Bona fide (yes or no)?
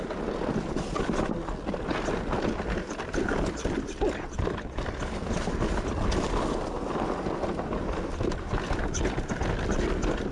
yes